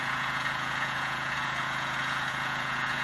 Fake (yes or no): yes